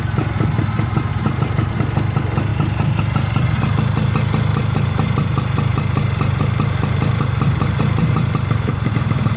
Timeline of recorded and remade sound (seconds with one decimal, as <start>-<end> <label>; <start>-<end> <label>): 0.0-1.1 recorded; 1.1-1.7 remade; 1.7-4.5 recorded; 4.5-8.9 remade; 8.9-9.4 recorded

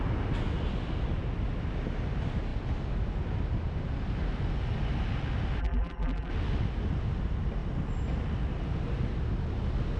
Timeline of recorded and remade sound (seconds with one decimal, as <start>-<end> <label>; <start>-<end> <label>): 0.0-5.6 recorded; 5.6-6.3 remade; 6.3-10.0 recorded

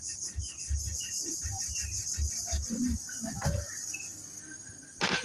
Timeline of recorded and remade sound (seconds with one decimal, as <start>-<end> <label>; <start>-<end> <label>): 0.0-5.2 recorded

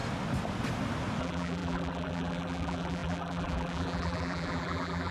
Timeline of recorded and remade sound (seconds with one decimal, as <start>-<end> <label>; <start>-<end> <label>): 0.0-1.2 recorded; 1.2-5.1 remade

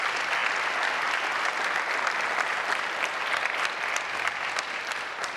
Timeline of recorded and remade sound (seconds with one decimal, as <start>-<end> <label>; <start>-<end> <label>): 0.0-5.4 recorded

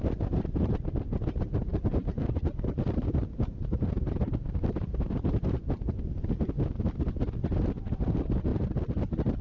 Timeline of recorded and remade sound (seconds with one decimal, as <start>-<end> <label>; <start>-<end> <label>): 0.0-1.7 recorded; 1.7-5.4 remade; 5.4-9.4 recorded

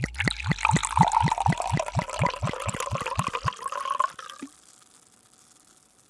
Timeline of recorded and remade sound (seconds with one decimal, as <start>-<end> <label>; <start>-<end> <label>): 0.0-6.1 recorded